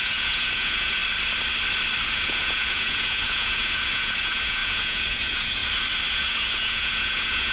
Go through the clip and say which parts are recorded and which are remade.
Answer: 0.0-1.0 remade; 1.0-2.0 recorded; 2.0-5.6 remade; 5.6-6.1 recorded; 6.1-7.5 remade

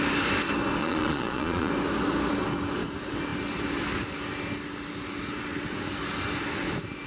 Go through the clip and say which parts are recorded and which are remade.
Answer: 0.0-0.8 recorded; 0.8-1.7 remade; 1.7-7.1 recorded

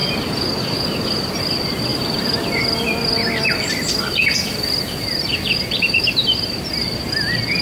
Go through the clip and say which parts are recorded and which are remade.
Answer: 0.0-1.3 remade; 1.3-1.9 recorded; 1.9-2.6 remade; 2.6-5.3 recorded; 5.3-6.7 remade; 6.7-7.6 recorded

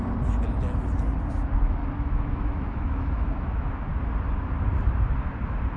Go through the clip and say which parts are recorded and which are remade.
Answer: 0.0-1.8 recorded; 1.8-3.7 remade; 3.7-5.8 recorded

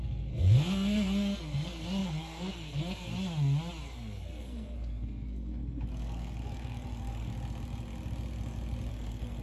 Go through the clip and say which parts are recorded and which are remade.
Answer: 0.0-3.1 remade; 3.1-3.8 recorded; 3.8-7.3 remade; 7.3-8.9 recorded; 8.9-9.4 remade

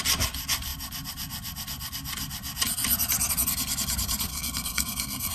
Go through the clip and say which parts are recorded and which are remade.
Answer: 0.0-4.3 recorded; 4.3-5.3 remade

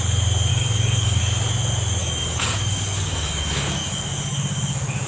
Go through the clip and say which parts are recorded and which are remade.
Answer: 0.0-0.5 recorded; 0.5-1.2 remade; 1.2-2.0 recorded; 2.0-5.1 remade

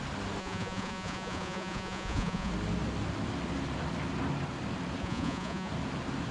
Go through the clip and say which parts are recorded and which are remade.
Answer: 0.0-0.4 recorded; 0.4-2.5 remade; 2.5-5.0 recorded; 5.0-5.7 remade; 5.7-6.3 recorded